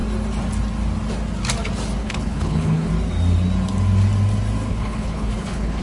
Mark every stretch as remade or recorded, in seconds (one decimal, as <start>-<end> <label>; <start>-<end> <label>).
0.0-2.0 recorded; 2.0-2.9 remade; 2.9-4.7 recorded; 4.7-5.8 remade